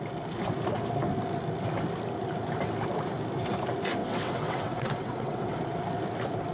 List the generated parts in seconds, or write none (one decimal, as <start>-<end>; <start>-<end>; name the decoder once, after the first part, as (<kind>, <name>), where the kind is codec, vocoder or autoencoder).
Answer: 4.0-5.6 (vocoder, WaveNeXt)